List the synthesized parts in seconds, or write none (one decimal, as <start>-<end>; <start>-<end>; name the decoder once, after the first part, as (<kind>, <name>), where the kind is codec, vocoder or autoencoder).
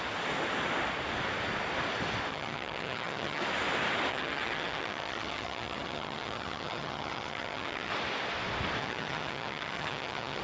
2.3-3.4 (vocoder, HiFi-GAN); 4.1-7.9; 8.8-10.4